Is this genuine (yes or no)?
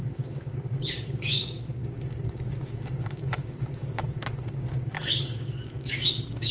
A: no